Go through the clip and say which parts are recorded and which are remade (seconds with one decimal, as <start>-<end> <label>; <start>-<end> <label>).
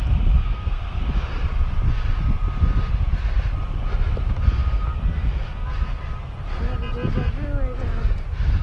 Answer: 0.0-0.4 recorded; 0.4-1.0 remade; 1.0-8.6 recorded